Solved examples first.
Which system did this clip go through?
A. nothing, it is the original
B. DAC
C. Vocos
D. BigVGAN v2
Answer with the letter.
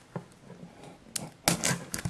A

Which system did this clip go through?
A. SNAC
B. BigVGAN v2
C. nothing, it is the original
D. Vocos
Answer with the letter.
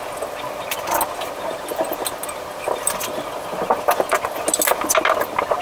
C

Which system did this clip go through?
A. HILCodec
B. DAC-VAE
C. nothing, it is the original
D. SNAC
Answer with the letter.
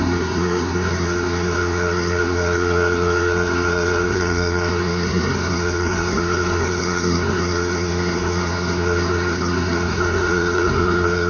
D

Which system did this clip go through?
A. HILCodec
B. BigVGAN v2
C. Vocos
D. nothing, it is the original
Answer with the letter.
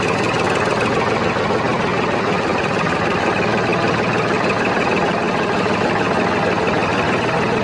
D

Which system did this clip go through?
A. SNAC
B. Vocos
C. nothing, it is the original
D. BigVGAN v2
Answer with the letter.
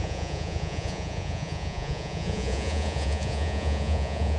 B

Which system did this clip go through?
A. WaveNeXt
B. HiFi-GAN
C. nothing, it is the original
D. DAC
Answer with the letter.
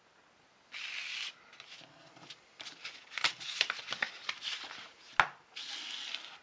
C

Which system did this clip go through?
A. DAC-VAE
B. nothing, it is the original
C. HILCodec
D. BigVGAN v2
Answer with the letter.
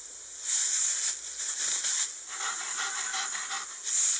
B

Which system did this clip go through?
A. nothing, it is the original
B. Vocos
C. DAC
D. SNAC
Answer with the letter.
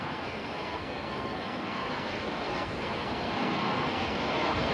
D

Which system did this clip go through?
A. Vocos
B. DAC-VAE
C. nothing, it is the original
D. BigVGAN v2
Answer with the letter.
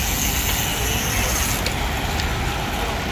C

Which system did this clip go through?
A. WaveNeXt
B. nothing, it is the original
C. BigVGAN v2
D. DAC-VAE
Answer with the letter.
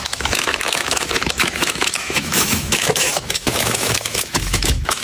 D